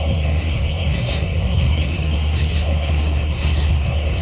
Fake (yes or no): yes